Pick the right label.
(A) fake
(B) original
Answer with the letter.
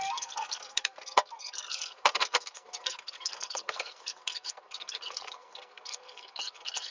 A